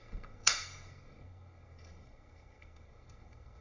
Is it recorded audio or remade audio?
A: remade